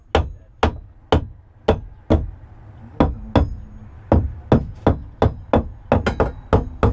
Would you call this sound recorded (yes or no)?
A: yes